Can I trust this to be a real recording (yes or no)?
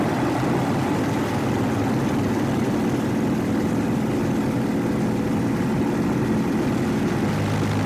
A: yes